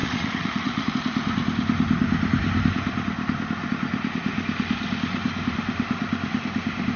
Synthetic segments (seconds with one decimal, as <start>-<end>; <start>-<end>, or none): 0.0-0.9